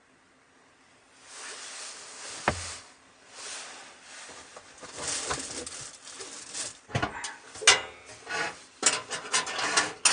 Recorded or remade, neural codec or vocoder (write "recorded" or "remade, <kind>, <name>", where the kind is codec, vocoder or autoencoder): recorded